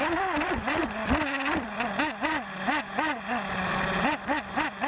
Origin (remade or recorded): recorded